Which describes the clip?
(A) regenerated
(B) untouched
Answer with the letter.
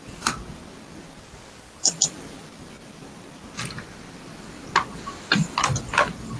B